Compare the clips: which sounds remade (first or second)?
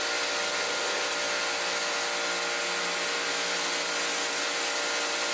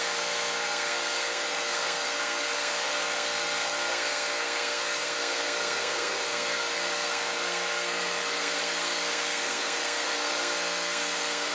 second